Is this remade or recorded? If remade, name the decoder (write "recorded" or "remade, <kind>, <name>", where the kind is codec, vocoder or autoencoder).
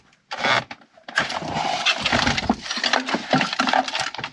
recorded